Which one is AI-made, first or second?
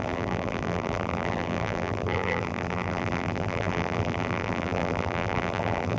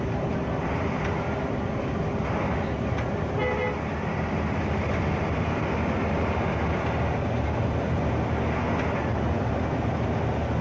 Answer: first